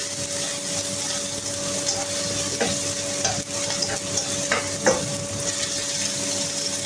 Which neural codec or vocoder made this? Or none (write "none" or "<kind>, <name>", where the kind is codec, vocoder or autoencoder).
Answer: none